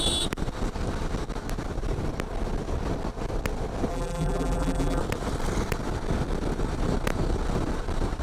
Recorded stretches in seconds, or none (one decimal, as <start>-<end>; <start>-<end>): 0.0-3.9; 5.0-8.2